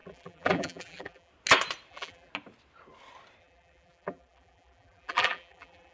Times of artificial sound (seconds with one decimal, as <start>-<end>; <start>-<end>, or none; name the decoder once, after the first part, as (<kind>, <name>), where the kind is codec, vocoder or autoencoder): 0.0-1.3 (vocoder, BigVGAN v2); 1.9-2.3; 3.4-5.9